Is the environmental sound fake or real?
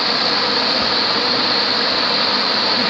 real